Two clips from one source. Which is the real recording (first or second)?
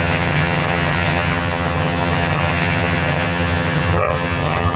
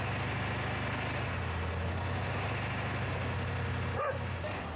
second